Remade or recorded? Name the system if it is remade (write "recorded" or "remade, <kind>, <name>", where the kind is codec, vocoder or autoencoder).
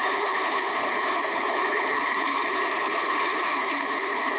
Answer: remade, codec, HILCodec